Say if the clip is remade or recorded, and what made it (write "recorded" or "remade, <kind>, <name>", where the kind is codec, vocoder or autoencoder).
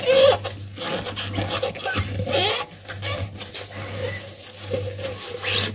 recorded